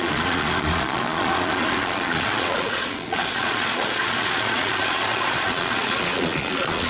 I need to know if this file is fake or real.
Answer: fake